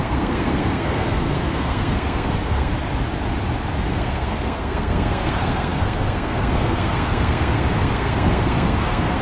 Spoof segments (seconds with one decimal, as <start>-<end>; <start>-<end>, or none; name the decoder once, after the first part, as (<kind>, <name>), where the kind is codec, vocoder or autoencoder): 0.0-2.7 (codec, SNAC); 3.9-9.2